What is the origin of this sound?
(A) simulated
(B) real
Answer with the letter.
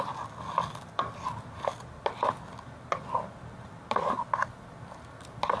B